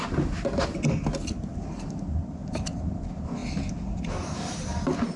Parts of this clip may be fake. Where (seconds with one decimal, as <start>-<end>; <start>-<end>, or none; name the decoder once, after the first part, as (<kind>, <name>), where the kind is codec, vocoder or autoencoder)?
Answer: none